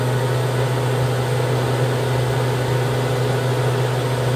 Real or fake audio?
real